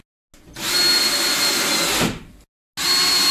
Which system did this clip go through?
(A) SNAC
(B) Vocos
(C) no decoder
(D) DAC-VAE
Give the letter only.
C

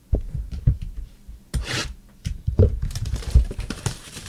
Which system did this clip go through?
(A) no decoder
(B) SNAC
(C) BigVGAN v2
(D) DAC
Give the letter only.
C